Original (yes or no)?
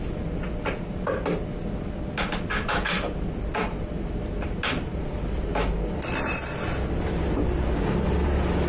yes